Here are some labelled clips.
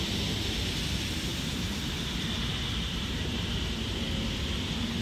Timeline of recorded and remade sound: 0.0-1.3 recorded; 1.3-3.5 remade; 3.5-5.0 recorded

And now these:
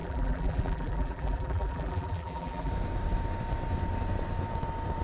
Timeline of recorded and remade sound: 0.0-2.7 remade; 2.7-5.0 recorded

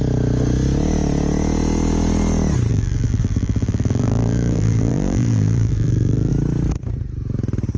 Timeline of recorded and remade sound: 0.0-2.7 recorded; 2.7-6.3 remade; 6.3-7.8 recorded

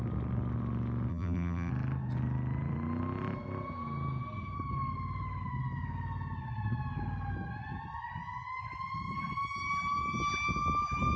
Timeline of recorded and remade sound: 0.0-1.1 recorded; 1.1-1.7 remade; 1.7-11.2 recorded

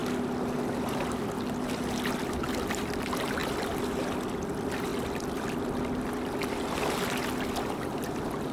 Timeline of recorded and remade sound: 0.0-0.6 remade; 0.6-3.4 recorded; 3.4-4.5 remade; 4.5-8.5 recorded

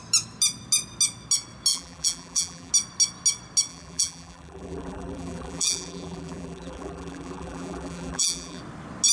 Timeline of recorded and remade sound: 0.0-1.7 recorded; 1.7-2.7 remade; 2.7-3.7 recorded; 3.7-8.6 remade; 8.6-9.1 recorded